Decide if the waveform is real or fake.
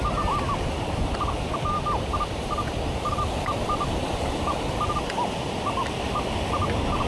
fake